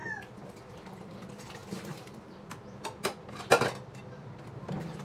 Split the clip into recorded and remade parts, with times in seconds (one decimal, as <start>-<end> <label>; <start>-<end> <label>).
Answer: 0.0-5.0 recorded